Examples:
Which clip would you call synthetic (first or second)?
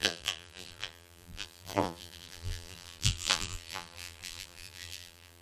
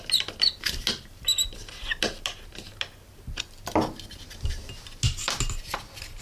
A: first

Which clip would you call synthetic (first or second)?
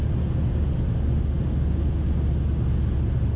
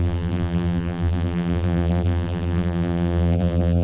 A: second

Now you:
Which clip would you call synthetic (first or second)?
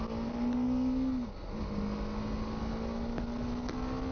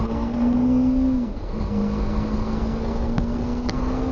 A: second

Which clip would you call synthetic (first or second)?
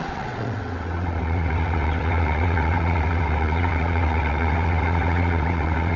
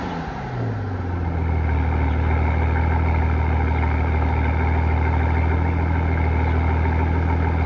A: first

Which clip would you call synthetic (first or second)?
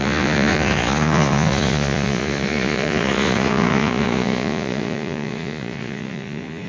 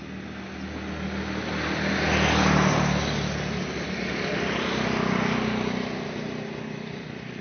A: first